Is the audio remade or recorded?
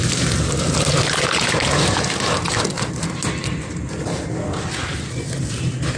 recorded